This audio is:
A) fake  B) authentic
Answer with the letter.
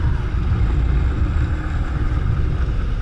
B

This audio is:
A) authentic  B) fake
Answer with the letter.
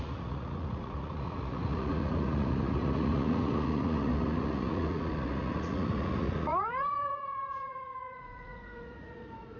B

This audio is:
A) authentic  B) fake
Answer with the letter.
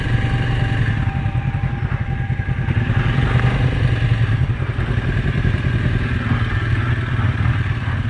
A